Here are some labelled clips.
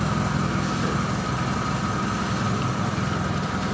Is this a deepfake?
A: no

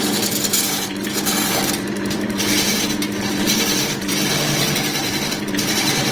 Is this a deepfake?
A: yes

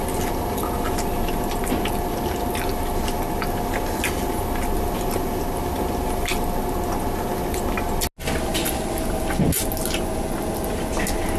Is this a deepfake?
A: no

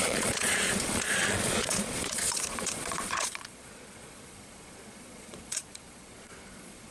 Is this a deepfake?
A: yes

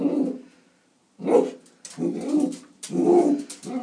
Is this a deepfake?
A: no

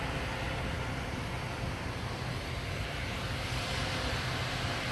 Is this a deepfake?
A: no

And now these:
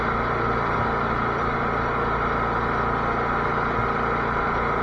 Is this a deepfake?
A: no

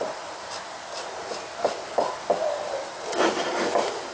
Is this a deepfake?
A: no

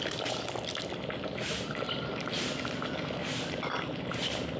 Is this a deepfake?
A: no